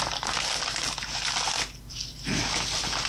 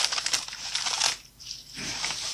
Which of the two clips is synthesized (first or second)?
second